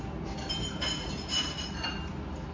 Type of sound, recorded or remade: recorded